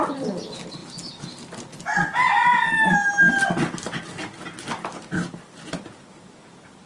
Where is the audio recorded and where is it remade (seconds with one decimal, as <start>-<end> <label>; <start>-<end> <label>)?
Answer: 0.0-6.9 recorded